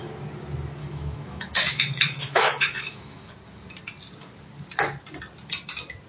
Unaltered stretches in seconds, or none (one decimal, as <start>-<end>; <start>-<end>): 0.0-0.8; 3.3-6.1